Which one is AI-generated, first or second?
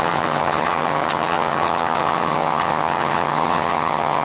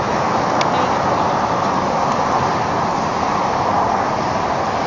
first